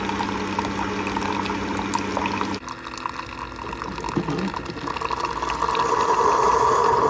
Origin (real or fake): real